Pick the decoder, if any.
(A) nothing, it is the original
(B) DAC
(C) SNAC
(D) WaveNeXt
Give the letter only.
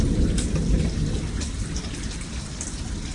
A